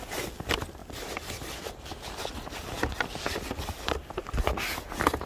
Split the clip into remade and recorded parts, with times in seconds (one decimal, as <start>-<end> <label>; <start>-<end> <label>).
0.0-5.3 recorded